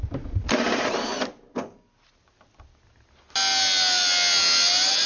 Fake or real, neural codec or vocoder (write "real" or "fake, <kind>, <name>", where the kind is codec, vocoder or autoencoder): real